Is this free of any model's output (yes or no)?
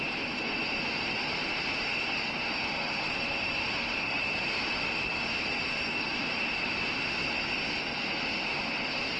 yes